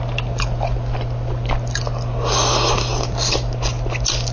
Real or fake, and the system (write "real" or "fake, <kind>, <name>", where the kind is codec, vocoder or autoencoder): real